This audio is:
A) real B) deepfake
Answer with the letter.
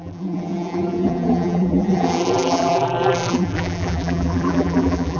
B